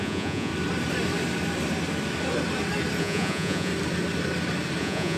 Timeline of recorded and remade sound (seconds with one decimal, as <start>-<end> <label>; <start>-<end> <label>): 0.0-0.5 remade; 0.5-3.0 recorded; 3.0-3.7 remade; 3.7-4.8 recorded; 4.8-5.2 remade